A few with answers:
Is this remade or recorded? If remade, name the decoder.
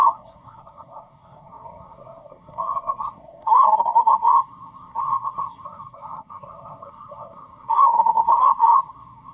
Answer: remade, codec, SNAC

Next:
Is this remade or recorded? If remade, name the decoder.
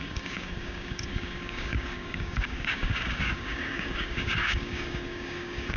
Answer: remade, codec, DAC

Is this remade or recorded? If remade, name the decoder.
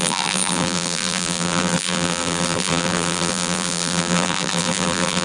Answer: remade, vocoder, BigVGAN v2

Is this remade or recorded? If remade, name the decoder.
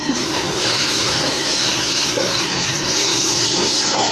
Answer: remade, codec, SNAC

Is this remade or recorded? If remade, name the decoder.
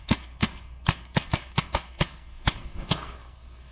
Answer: remade, codec, SNAC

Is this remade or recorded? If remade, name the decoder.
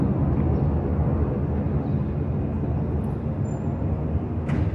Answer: recorded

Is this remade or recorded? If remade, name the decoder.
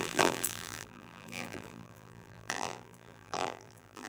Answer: remade, vocoder, BigVGAN v2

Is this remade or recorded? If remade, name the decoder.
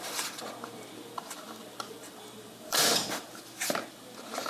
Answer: remade, vocoder, BigVGAN v2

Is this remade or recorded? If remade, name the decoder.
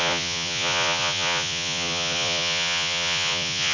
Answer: remade, vocoder, Vocos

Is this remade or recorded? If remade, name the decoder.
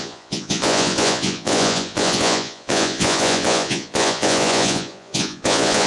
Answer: remade, vocoder, Vocos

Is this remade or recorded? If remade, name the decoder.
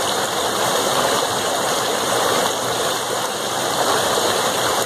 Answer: remade, vocoder, BigVGAN v2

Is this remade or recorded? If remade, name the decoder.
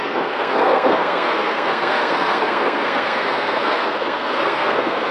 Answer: remade, codec, SNAC